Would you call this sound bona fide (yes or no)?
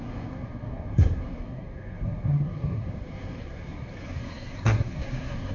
no